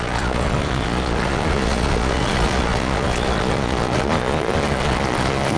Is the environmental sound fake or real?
fake